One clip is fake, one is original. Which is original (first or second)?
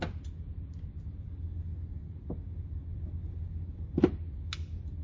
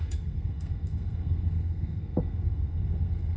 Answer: first